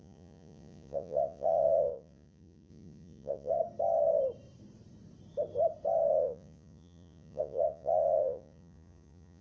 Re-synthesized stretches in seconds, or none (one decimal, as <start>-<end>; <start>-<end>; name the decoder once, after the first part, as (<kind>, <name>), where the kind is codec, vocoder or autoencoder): 0.0-3.6 (vocoder, Vocos); 6.1-9.4

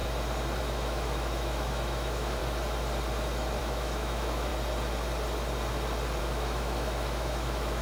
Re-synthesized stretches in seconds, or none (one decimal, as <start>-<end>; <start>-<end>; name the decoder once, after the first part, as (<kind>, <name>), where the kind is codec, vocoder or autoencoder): 0.6-2.4 (autoencoder, DAC-VAE); 3.6-4.5; 6.2-7.8

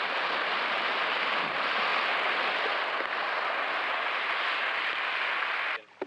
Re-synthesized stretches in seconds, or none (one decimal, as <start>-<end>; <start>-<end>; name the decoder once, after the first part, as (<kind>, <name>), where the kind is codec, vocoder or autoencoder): none

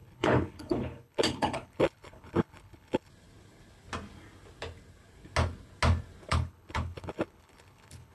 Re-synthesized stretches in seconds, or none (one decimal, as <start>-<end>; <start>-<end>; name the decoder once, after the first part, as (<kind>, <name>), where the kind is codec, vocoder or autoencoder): 0.0-3.1 (codec, HILCodec); 6.3-8.1

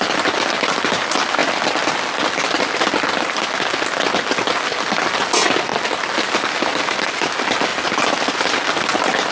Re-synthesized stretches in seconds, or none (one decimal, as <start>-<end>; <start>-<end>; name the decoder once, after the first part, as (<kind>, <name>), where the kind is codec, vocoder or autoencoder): none

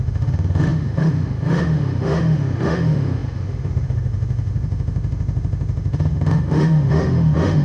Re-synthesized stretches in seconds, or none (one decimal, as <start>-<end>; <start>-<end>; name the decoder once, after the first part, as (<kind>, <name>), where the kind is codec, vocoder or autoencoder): 0.0-7.6 (autoencoder, DAC-VAE)

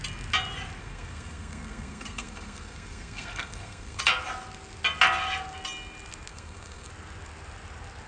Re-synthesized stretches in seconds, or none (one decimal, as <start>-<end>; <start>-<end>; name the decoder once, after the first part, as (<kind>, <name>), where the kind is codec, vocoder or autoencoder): 0.8-4.0 (codec, SNAC); 6.3-6.9